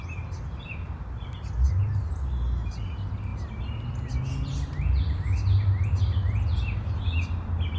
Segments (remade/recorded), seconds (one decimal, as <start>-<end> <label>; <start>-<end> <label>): 0.0-7.8 recorded